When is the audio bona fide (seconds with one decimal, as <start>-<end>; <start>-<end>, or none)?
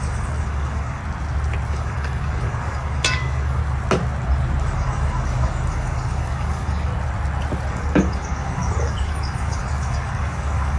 1.0-1.7; 3.6-4.6; 6.9-7.7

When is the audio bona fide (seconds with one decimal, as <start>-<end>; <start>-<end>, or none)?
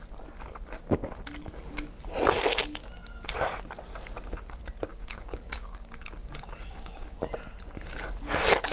0.0-4.9; 7.2-8.7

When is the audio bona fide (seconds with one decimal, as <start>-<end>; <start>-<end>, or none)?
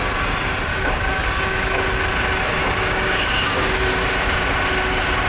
0.0-0.7; 1.9-2.6; 3.9-5.3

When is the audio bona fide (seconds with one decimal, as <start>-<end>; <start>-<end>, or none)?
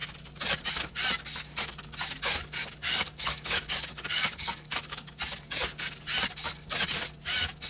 0.0-2.6; 5.2-7.7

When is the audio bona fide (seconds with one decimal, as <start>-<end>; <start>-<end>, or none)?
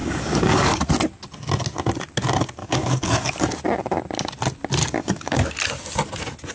0.8-2.6; 3.3-4.8; 5.4-6.5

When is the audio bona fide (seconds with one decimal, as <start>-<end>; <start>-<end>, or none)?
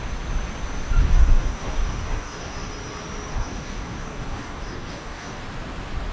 0.0-1.0; 2.7-3.3; 5.4-6.1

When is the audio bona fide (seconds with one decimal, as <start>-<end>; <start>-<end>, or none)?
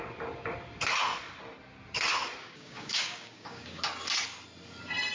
0.0-2.4; 3.8-5.1